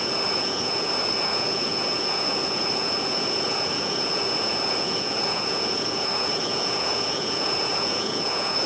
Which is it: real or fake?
fake